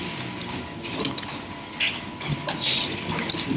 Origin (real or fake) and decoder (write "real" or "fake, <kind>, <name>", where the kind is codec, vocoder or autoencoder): real